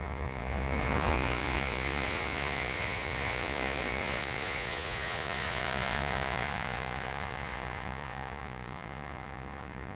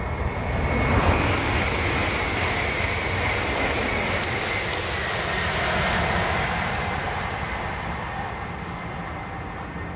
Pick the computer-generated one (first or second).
first